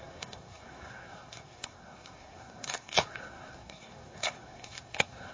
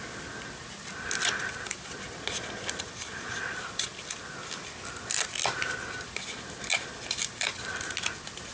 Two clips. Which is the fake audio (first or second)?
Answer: first